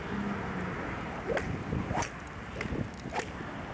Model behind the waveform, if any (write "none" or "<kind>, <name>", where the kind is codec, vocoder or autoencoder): none